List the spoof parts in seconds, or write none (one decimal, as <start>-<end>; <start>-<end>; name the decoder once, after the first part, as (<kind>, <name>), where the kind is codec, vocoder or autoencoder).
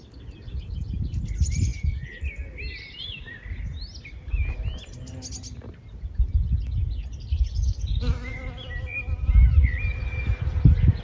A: none